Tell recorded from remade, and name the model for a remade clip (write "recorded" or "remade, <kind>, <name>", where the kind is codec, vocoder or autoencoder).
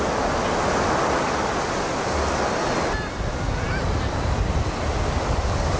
recorded